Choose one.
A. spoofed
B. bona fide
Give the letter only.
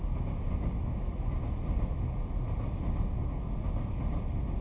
B